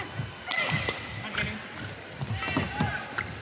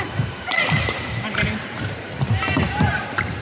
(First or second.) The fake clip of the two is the second